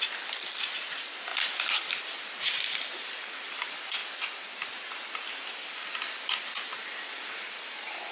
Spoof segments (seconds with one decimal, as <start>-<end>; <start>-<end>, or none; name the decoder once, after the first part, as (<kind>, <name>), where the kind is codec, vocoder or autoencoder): none